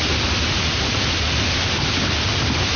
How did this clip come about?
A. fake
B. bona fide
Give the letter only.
B